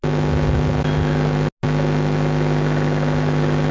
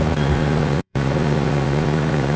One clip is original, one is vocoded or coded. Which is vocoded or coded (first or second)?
second